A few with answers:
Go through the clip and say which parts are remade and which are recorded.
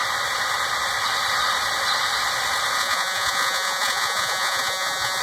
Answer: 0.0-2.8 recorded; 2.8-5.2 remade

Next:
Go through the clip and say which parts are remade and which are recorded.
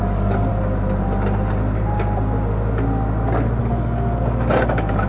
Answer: 0.0-0.5 remade; 0.5-3.6 recorded; 3.6-5.1 remade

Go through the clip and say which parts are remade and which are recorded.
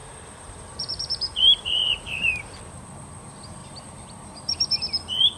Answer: 0.0-2.4 remade; 2.4-3.6 recorded; 3.6-4.1 remade; 4.1-5.4 recorded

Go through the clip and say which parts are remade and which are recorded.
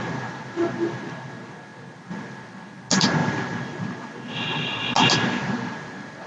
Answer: 0.0-6.3 recorded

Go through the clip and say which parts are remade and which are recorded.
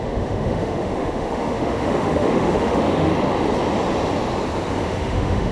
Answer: 0.0-3.1 remade; 3.1-4.8 recorded; 4.8-5.5 remade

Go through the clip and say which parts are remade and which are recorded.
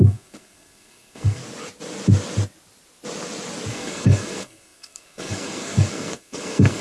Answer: 0.0-1.4 remade; 1.4-3.7 recorded; 3.7-6.8 remade